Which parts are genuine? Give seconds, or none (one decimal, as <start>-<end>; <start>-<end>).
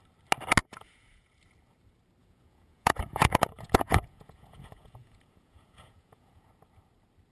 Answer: 0.0-0.6; 1.4-2.2; 6.5-7.3